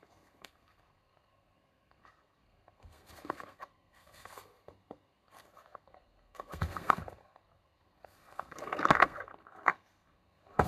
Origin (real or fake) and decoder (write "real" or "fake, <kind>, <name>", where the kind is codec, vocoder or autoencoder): fake, codec, SNAC